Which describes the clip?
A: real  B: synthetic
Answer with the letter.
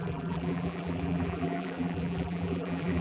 B